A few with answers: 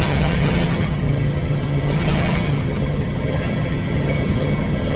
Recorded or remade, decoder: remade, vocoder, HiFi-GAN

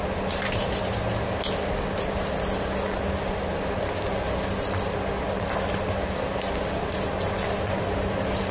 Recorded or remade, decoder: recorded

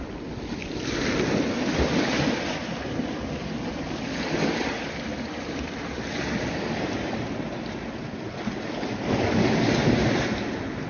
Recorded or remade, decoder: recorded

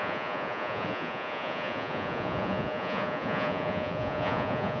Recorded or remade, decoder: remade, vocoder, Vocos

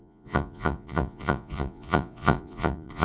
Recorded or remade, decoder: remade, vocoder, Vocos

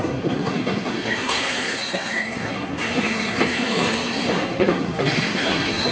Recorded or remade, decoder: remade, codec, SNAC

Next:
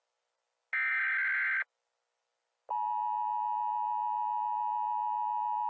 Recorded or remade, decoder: recorded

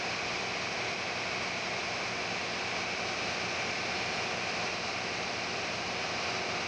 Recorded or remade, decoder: recorded